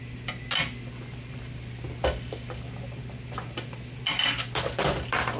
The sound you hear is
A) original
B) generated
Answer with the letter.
A